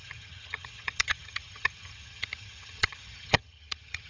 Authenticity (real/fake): fake